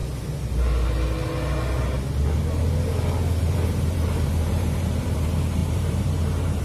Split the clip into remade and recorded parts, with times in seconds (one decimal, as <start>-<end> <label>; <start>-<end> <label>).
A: 0.0-3.4 recorded; 3.4-6.6 remade